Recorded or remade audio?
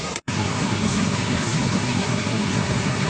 remade